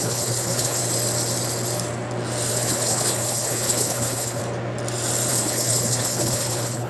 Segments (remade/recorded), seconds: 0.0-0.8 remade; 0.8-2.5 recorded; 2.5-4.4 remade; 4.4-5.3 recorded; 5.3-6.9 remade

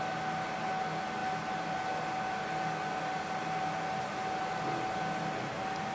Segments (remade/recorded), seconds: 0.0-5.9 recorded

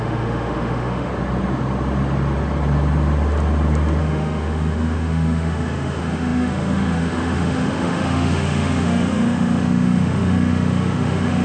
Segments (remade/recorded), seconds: 0.0-1.1 remade; 1.1-4.0 recorded; 4.0-11.4 remade

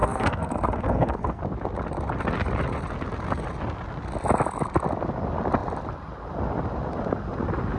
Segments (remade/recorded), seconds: 0.0-1.4 remade; 1.4-7.8 recorded